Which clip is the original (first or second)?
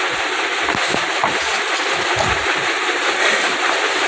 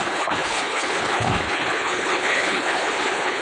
first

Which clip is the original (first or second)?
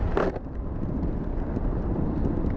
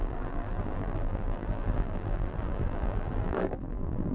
first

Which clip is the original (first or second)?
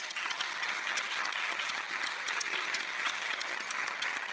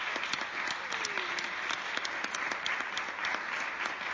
second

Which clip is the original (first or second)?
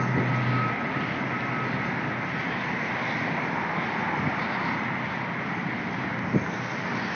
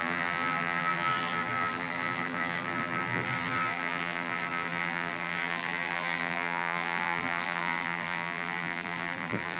first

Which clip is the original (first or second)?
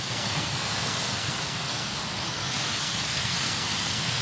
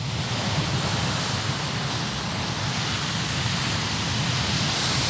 second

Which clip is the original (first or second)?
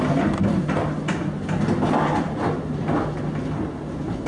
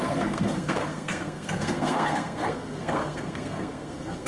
first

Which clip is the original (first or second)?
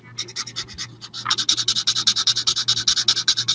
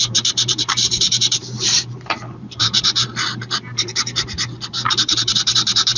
first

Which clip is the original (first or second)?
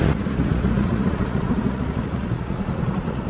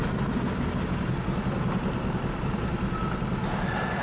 second